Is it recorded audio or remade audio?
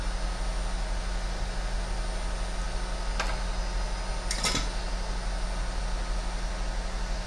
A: recorded